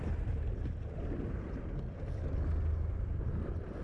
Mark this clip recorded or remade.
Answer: recorded